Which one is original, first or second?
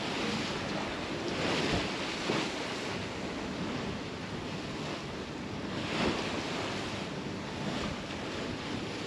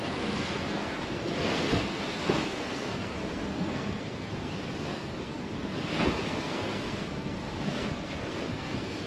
first